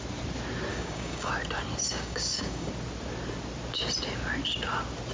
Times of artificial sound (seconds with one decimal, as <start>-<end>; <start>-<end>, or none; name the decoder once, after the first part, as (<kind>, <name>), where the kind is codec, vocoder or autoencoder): 0.7-1.3 (codec, DAC); 1.8-2.7